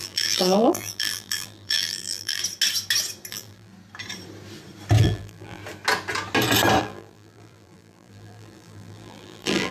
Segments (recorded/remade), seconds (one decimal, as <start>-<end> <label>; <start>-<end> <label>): 0.0-2.4 remade; 2.4-3.3 recorded; 3.3-3.7 remade; 3.7-5.0 recorded; 5.0-5.6 remade; 5.6-6.8 recorded; 6.8-9.7 remade